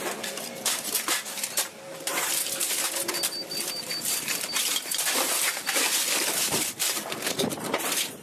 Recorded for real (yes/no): no